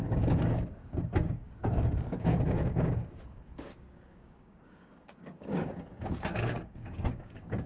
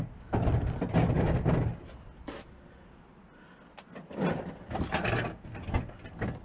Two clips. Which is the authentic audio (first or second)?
second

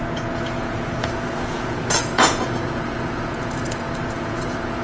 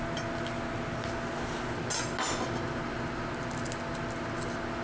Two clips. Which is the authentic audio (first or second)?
second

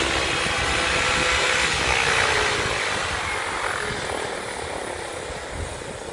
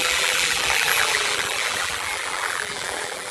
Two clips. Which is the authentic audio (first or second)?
first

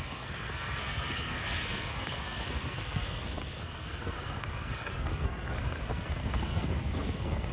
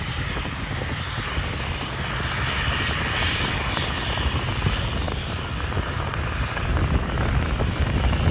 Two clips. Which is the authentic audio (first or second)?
second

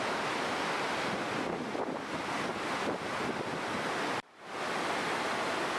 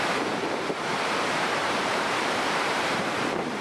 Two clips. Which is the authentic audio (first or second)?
first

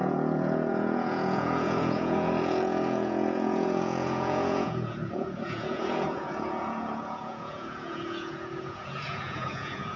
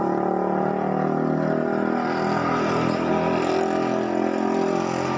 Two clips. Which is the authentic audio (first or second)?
second